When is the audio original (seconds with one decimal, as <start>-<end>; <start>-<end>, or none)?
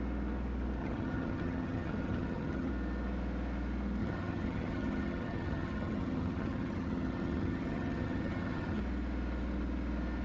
0.0-0.8; 2.7-4.0; 8.8-10.2